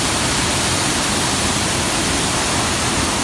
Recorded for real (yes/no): yes